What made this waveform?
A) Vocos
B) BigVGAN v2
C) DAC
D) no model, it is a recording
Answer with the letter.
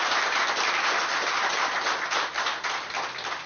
D